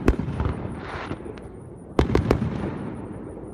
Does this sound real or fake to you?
fake